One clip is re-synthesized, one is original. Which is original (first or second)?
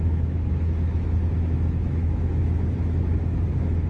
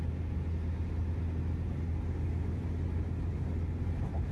second